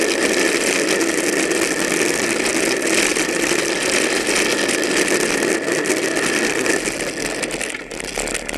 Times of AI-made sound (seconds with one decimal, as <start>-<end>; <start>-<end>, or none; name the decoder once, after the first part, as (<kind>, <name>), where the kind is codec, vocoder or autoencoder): 3.1-4.9 (vocoder, BigVGAN v2)